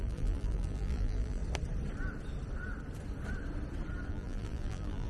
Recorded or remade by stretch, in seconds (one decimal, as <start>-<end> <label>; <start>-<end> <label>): 0.0-1.4 remade; 1.4-4.1 recorded; 4.1-5.1 remade